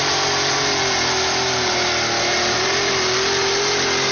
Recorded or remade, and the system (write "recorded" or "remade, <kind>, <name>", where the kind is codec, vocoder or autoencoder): recorded